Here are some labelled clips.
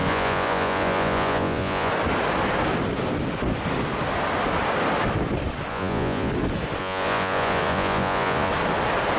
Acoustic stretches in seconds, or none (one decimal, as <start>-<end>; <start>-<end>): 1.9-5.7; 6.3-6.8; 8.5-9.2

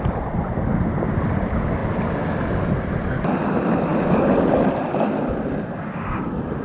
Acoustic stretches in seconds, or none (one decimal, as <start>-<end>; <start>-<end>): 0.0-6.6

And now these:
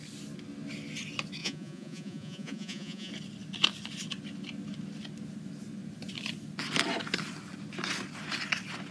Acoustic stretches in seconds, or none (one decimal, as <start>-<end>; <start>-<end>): 0.0-1.4; 3.1-8.9